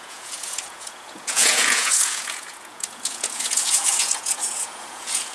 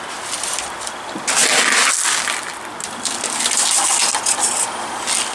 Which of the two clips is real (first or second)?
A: second